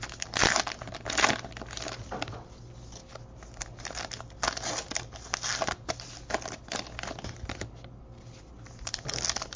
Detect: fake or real real